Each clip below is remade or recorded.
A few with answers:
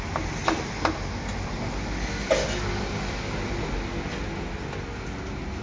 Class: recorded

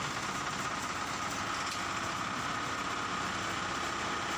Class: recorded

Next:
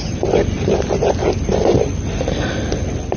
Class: recorded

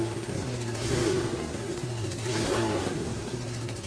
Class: remade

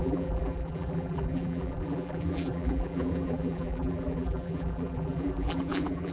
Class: remade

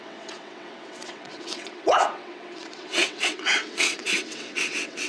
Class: remade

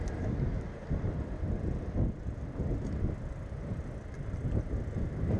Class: recorded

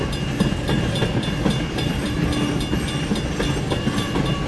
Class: recorded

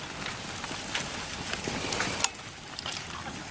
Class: recorded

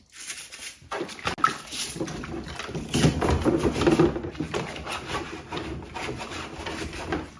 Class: recorded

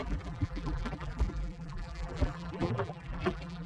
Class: remade